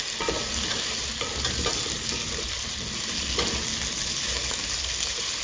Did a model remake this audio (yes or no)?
no